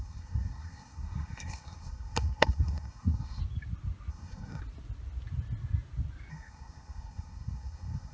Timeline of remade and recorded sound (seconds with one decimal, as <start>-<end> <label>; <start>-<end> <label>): 0.0-3.4 remade; 3.4-4.1 recorded; 4.1-4.6 remade; 4.6-6.3 recorded; 6.3-8.1 remade